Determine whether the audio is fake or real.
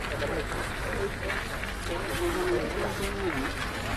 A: real